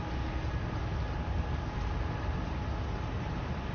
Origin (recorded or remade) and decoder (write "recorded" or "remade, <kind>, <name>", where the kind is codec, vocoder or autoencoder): recorded